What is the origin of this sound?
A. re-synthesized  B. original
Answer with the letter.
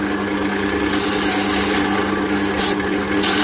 B